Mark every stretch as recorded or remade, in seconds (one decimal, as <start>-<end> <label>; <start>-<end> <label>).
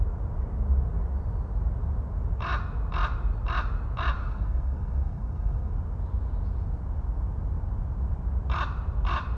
0.0-4.2 recorded; 4.2-5.7 remade; 5.7-9.4 recorded